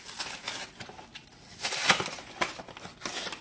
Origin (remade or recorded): recorded